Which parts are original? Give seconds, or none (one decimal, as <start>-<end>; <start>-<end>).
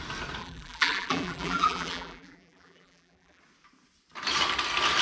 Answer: 0.0-0.4; 3.4-5.0